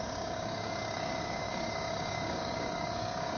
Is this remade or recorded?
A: remade